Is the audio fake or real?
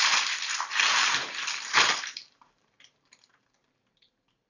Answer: fake